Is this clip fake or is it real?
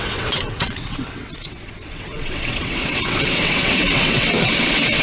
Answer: fake